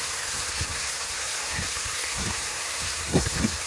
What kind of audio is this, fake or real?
fake